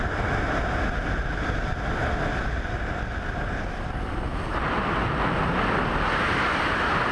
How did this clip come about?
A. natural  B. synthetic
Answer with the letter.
A